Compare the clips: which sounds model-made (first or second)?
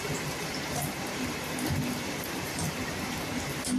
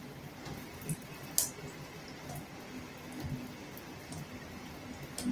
first